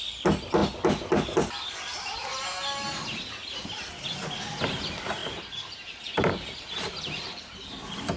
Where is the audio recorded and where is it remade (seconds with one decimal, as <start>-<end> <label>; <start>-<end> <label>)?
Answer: 0.0-5.2 recorded; 5.2-8.2 remade